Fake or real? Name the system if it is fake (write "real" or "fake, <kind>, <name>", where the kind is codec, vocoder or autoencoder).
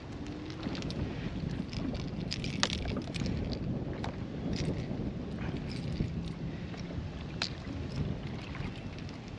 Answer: real